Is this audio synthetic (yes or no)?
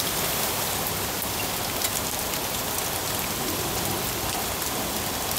yes